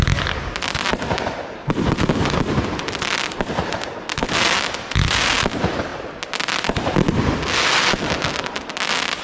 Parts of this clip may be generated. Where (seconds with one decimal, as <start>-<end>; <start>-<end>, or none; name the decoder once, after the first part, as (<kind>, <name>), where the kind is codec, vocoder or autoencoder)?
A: none